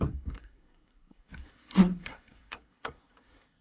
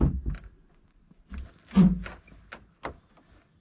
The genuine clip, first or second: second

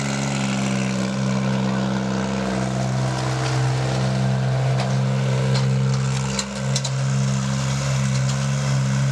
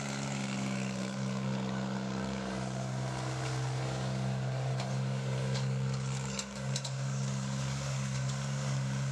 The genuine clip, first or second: first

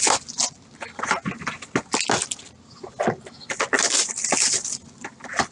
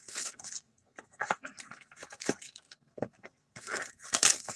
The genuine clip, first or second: first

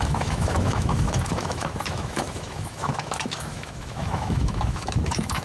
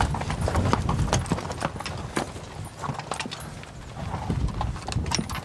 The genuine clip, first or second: second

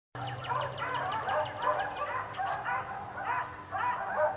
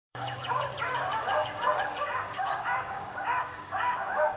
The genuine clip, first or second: first